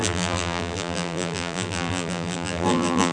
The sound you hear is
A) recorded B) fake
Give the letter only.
B